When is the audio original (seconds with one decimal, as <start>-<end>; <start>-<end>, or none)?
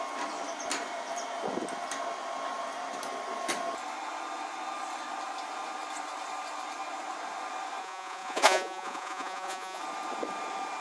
0.0-7.8; 9.8-10.8